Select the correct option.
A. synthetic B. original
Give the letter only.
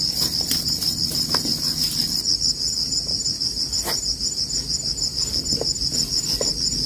B